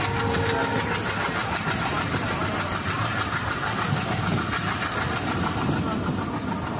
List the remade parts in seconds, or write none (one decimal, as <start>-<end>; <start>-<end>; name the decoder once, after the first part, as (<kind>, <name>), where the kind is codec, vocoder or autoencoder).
1.4-2.3 (vocoder, BigVGAN v2)